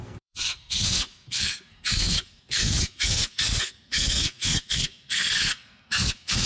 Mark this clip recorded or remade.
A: remade